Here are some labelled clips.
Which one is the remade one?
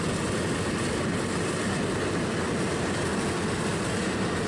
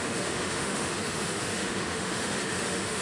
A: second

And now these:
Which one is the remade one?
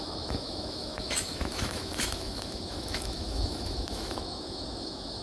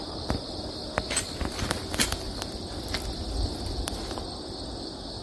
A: first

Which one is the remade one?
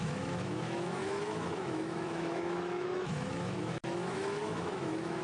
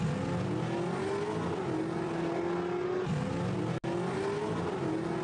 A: first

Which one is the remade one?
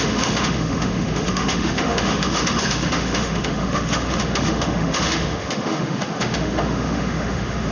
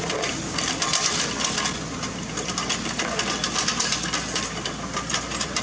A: first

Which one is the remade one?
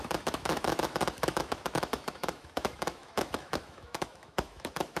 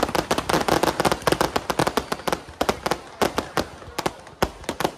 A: first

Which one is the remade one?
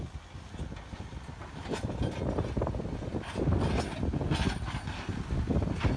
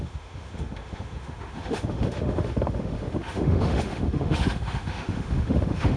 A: second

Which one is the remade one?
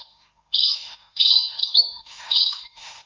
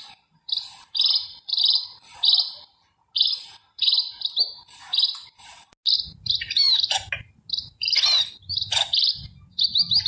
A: first